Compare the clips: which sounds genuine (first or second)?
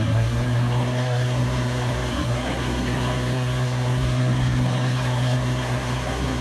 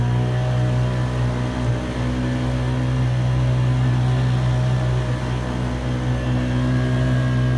second